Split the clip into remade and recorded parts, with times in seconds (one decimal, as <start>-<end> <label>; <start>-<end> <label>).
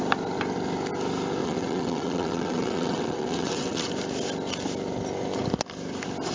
0.0-1.4 recorded; 1.4-3.9 remade; 3.9-6.3 recorded